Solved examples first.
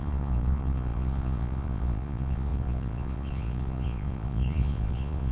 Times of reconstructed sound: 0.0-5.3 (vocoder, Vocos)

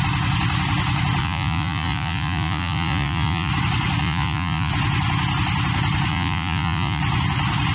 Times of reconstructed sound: 1.2-3.5 (vocoder, Vocos); 4.0-4.7; 6.1-7.0

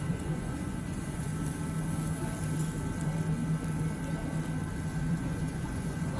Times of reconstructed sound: 0.0-1.3 (vocoder, Vocos); 5.0-6.2

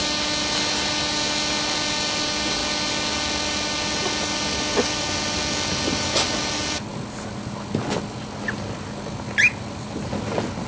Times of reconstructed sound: none